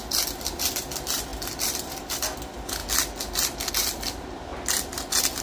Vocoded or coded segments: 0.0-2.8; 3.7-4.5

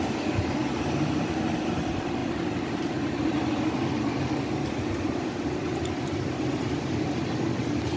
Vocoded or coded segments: 0.6-1.4

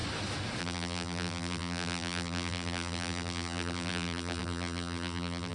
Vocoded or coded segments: 0.6-5.5

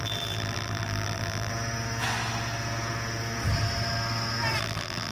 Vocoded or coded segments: 0.0-1.5; 4.6-5.1